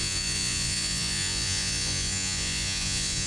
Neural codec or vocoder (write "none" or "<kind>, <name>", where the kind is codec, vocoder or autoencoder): vocoder, Vocos